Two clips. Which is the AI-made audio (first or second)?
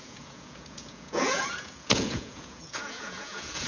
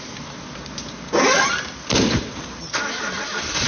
first